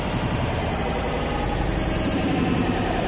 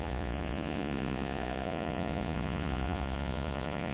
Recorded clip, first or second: first